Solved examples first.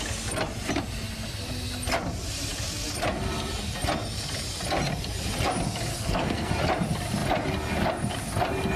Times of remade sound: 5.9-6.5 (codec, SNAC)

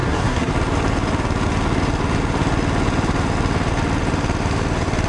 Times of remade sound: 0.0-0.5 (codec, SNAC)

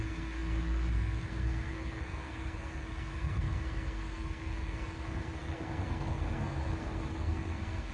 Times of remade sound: 0.0-7.9 (codec, SNAC)

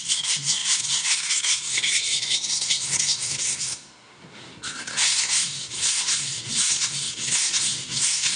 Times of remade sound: 0.0-8.4 (codec, SNAC)

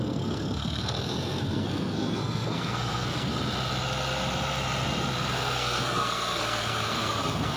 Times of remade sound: 0.0-3.3 (codec, SNAC); 5.3-7.6

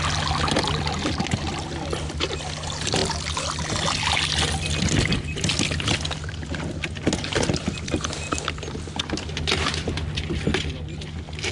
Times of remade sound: none

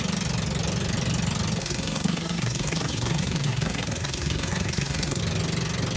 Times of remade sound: 1.6-5.2 (codec, SNAC)

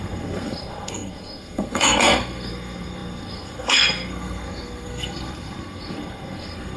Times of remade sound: 0.0-6.8 (codec, SNAC)